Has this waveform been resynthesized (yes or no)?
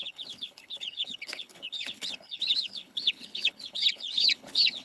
yes